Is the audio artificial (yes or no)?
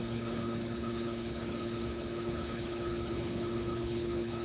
yes